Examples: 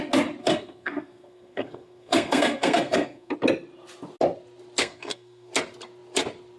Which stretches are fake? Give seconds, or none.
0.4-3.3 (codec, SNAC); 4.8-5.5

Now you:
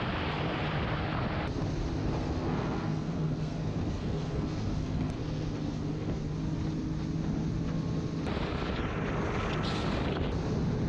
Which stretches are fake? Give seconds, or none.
2.0-6.2 (codec, SNAC)

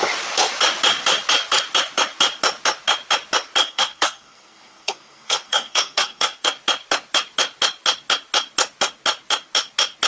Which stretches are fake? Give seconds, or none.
3.6-6.5 (codec, SNAC)

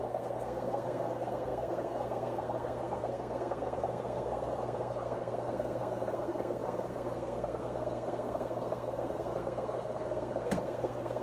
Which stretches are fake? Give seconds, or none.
0.0-11.2 (codec, SNAC)

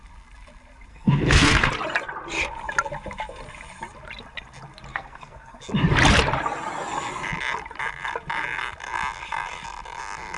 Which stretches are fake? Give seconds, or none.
0.9-1.7 (codec, SNAC); 4.9-5.6

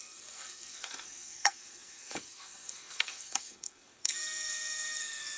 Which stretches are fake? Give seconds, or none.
0.0-5.4 (codec, SNAC)

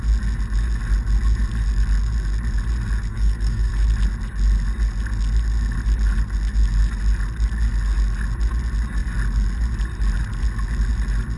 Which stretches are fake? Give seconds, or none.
3.1-3.7 (codec, SNAC)

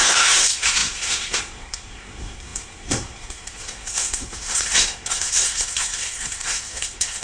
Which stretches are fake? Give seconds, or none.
0.0-7.2 (codec, SNAC)